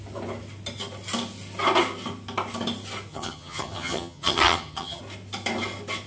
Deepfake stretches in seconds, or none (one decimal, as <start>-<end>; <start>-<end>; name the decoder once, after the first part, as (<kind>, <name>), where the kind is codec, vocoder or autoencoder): 3.1-5.0 (vocoder, HiFi-GAN)